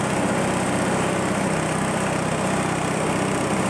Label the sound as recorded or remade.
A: recorded